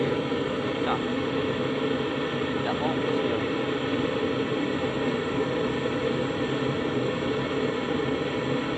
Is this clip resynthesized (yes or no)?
no